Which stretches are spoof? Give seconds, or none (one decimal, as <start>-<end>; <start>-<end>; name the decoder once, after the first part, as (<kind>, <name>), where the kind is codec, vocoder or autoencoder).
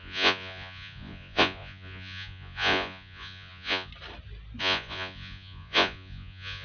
0.0-3.9 (vocoder, Vocos); 4.6-6.6